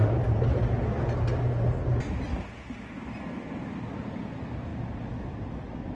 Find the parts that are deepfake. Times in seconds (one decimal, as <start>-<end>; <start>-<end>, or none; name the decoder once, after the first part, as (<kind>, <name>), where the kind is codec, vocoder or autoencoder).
none

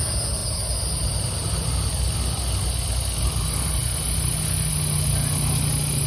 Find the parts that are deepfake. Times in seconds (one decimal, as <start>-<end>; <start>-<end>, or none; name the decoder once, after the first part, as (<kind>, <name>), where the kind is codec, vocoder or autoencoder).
none

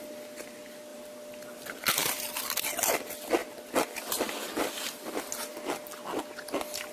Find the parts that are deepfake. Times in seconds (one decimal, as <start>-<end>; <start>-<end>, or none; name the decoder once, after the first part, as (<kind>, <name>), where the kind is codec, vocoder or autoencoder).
0.9-3.0 (vocoder, BigVGAN v2); 3.4-5.1

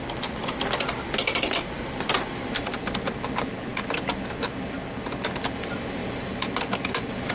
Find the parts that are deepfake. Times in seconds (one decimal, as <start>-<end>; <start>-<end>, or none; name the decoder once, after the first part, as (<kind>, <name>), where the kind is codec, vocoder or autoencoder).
6.0-7.3 (vocoder, BigVGAN v2)

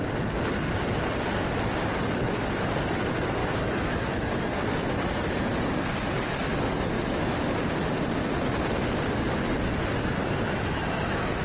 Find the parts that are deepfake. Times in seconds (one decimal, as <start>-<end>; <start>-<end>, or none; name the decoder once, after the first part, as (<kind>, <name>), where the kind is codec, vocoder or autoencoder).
3.4-4.5 (autoencoder, DAC-VAE); 6.5-7.3; 10.2-11.4

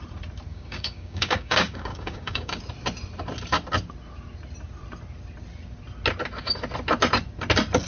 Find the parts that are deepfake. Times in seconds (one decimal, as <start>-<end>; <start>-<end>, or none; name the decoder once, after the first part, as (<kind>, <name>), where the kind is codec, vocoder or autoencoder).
0.5-2.6 (codec, DAC)

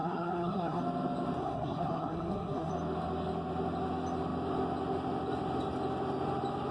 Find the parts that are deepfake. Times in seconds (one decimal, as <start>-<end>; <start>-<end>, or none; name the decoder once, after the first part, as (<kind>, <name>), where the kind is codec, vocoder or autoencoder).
0.0-0.8 (codec, SNAC); 1.4-2.7

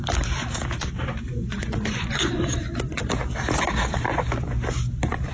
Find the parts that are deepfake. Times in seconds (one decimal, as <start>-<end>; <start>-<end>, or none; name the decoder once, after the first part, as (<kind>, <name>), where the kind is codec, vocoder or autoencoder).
1.4-3.0 (vocoder, Vocos)